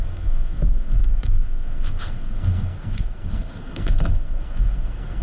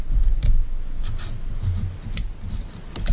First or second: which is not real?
first